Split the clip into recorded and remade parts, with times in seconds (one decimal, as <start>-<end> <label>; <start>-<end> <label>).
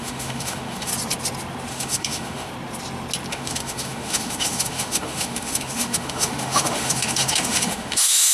0.0-0.9 remade; 0.9-1.7 recorded; 1.7-2.5 remade; 2.5-3.3 recorded; 3.3-8.3 remade